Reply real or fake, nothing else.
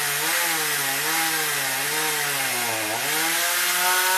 real